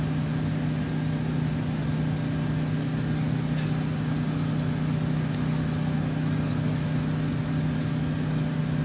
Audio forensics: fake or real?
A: real